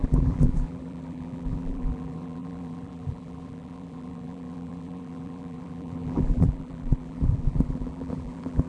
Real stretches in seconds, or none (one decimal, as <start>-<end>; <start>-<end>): none